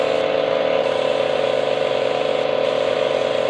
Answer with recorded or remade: recorded